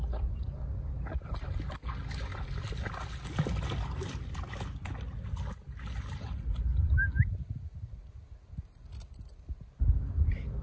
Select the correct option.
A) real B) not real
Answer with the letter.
A